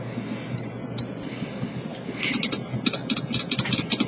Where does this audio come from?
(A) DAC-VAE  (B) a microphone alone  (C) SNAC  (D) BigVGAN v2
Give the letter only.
B